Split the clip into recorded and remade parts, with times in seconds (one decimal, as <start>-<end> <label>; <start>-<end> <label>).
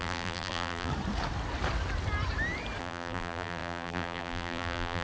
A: 0.0-0.9 remade; 0.9-2.8 recorded; 2.8-5.0 remade